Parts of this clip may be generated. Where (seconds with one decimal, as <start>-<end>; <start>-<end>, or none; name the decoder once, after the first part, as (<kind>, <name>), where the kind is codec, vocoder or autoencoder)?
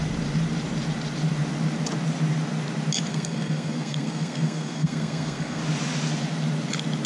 3.1-5.6 (codec, SNAC)